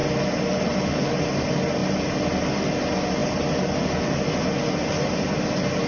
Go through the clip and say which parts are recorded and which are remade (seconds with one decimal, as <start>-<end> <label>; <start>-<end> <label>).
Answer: 0.0-5.9 recorded